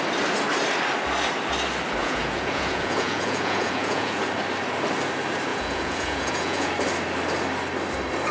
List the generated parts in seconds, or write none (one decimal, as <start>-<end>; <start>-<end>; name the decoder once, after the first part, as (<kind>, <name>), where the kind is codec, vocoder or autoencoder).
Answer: 2.0-4.2 (vocoder, Vocos); 5.5-6.7